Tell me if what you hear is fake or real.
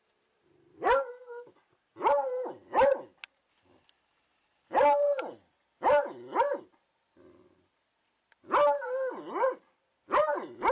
real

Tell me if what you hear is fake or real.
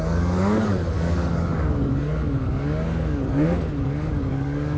fake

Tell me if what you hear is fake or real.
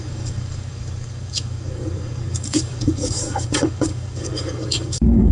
fake